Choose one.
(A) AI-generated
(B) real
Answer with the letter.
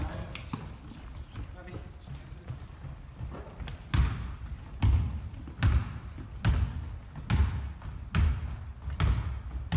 B